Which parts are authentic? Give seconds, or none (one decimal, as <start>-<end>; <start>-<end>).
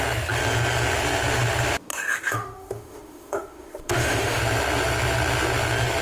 0.0-1.9; 4.4-6.0